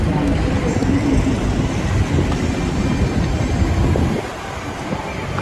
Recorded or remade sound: recorded